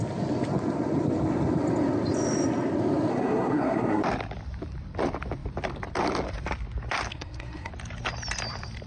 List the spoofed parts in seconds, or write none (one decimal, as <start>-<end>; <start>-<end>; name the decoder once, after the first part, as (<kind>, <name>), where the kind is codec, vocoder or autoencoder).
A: 3.1-4.0 (codec, SNAC); 7.1-7.7